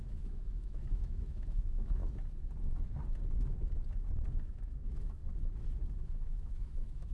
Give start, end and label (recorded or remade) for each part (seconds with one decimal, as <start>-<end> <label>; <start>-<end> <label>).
0.0-2.0 remade; 2.0-4.3 recorded; 4.3-5.2 remade; 5.2-5.9 recorded; 5.9-7.1 remade